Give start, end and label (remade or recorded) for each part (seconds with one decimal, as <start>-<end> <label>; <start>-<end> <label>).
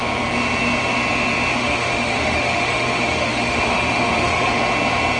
0.0-1.5 recorded; 1.5-4.6 remade; 4.6-5.2 recorded